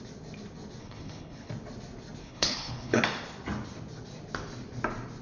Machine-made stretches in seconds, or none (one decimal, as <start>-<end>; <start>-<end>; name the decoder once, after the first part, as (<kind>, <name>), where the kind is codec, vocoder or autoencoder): 0.8-1.5 (codec, HILCodec); 2.2-3.0